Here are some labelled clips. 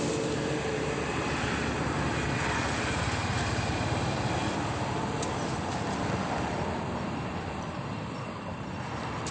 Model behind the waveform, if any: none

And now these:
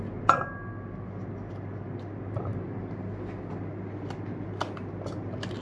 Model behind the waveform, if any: none